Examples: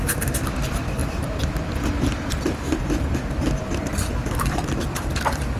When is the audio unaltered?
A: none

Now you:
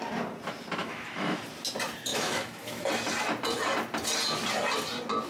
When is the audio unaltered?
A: 0.0-0.8; 1.4-2.1; 2.9-5.3

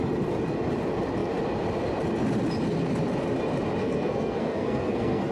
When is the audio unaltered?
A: 0.0-3.8

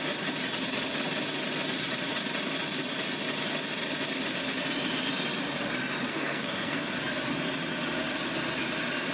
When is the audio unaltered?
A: 0.0-6.1; 7.0-9.1